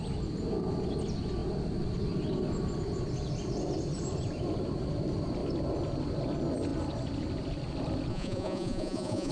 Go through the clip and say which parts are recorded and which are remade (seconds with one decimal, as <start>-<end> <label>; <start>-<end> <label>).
0.0-8.1 recorded; 8.1-9.3 remade